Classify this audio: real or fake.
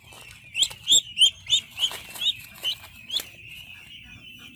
real